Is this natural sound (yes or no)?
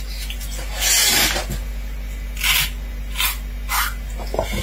yes